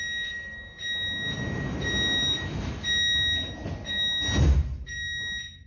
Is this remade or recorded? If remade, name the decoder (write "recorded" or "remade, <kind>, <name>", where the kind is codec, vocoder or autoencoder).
recorded